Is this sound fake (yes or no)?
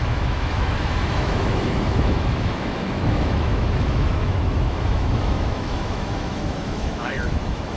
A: yes